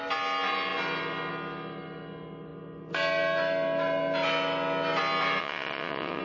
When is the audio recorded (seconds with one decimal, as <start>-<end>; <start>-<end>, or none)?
0.0-5.4